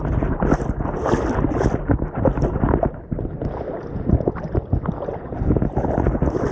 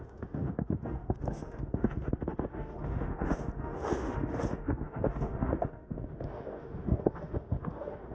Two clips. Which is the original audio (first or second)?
first